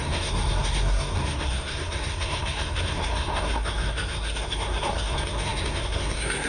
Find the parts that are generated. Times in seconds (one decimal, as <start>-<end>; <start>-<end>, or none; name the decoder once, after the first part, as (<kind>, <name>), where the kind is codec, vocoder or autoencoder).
0.0-6.5 (codec, SNAC)